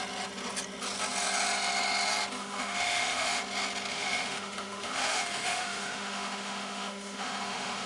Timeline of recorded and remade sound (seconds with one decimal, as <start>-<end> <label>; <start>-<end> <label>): 0.0-2.4 recorded; 2.4-3.4 remade; 3.4-3.9 recorded; 3.9-7.9 remade

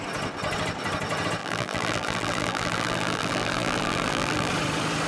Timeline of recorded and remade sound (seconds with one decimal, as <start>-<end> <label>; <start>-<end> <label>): 0.0-1.4 recorded; 1.4-4.5 remade; 4.5-5.1 recorded

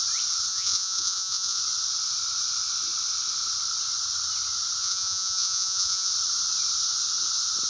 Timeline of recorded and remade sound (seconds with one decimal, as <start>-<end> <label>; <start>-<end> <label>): 0.0-0.5 recorded; 0.5-1.6 remade; 1.6-4.8 recorded; 4.8-6.1 remade; 6.1-7.7 recorded